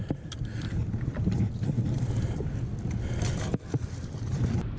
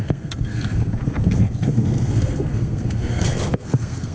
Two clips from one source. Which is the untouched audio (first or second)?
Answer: first